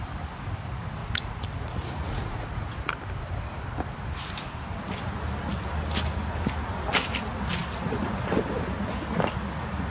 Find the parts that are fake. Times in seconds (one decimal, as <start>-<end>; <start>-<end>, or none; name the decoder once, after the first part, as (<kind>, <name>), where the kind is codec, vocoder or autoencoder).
1.0-2.9 (vocoder, Vocos)